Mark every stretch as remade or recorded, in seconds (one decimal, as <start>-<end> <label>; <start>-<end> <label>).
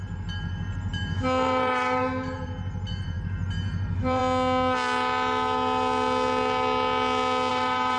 0.0-4.2 remade; 4.2-7.5 recorded; 7.5-8.0 remade